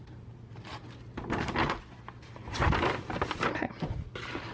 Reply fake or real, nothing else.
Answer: real